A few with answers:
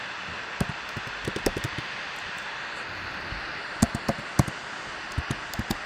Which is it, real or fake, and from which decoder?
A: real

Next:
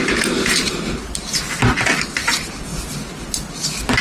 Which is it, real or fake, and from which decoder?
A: real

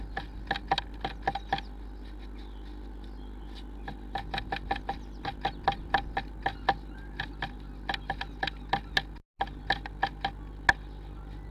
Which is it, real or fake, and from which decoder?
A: real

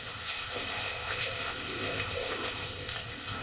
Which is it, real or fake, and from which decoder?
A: fake, codec, ZipCodec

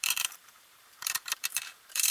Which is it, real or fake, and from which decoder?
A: fake, vocoder, BigVGAN v2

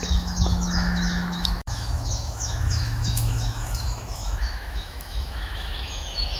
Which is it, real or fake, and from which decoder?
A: fake, autoencoder, DAC-VAE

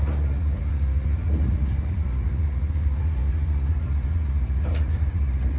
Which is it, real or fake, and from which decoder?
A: fake, vocoder, Vocos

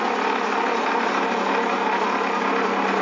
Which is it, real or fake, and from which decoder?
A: real